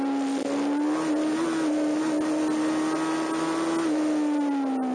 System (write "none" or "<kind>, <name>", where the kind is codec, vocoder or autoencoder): none